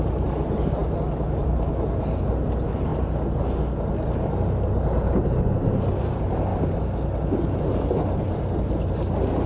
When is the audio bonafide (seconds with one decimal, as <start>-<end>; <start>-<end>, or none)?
0.0-9.5